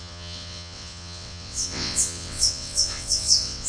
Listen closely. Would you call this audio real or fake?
fake